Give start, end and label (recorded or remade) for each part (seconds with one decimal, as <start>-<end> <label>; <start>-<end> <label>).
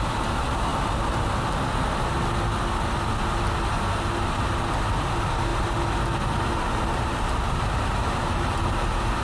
0.0-0.7 remade; 0.7-4.7 recorded; 4.7-5.5 remade; 5.5-6.4 recorded; 6.4-9.2 remade